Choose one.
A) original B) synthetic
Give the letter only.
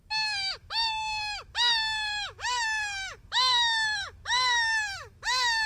B